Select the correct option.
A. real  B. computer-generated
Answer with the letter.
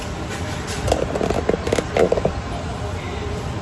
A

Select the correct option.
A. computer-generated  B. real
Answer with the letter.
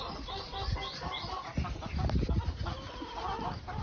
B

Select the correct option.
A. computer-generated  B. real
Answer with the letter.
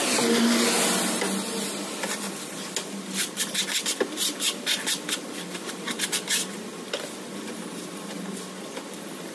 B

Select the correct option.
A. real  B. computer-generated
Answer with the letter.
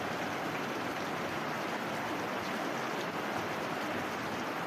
A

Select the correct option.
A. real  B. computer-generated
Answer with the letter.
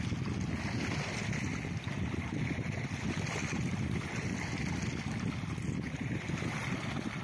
A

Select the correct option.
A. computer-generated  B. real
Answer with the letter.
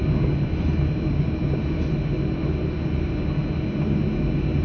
B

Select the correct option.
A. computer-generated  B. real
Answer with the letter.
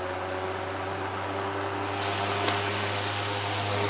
B